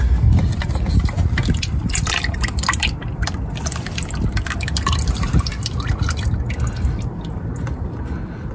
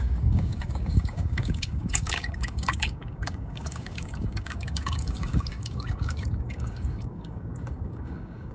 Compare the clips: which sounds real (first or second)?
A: first